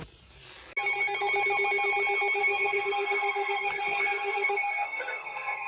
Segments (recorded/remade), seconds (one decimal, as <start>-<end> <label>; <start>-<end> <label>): 0.0-2.4 recorded; 2.4-5.7 remade

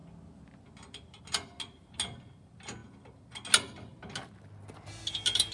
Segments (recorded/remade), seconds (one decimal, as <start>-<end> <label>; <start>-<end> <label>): 0.0-5.5 recorded

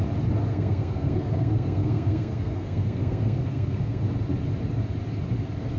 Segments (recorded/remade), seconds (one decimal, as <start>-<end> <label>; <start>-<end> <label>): 0.0-0.5 recorded; 0.5-4.0 remade; 4.0-5.8 recorded